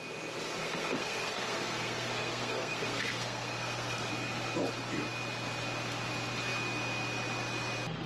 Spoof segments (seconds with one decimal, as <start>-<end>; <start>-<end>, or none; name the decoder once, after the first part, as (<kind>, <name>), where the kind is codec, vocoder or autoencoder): 0.6-4.1 (codec, SNAC)